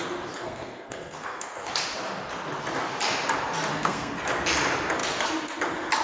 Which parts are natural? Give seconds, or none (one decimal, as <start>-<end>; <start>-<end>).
0.0-0.4; 1.7-3.7; 4.3-6.0